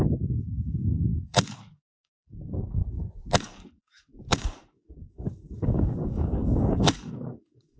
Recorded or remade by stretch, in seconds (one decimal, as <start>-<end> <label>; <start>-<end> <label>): 0.0-2.8 remade; 2.8-3.4 recorded; 3.4-7.8 remade

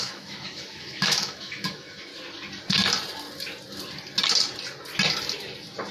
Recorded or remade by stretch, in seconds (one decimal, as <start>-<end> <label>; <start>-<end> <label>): 0.0-2.1 remade; 2.1-5.9 recorded